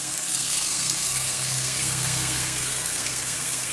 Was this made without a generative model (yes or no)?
no